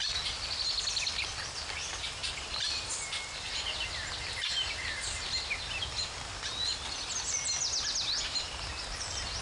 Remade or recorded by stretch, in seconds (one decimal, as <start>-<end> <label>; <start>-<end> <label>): 0.0-9.4 recorded